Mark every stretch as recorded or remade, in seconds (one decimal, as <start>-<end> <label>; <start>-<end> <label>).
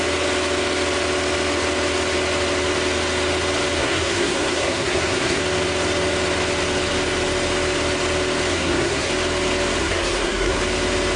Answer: 0.0-3.8 recorded; 3.8-5.4 remade; 5.4-8.5 recorded; 8.5-9.1 remade; 9.1-9.8 recorded; 9.8-10.6 remade; 10.6-11.2 recorded